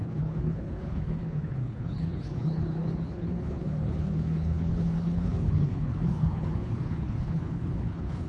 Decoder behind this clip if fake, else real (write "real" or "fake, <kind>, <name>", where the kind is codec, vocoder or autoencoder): fake, codec, HILCodec